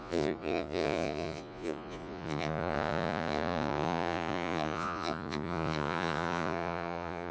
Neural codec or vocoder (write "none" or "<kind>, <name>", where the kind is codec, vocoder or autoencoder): vocoder, Vocos